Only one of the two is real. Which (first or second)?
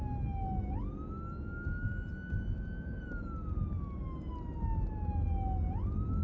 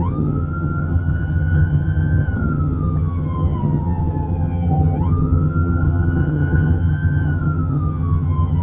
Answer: first